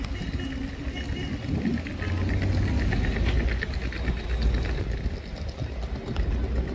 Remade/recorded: recorded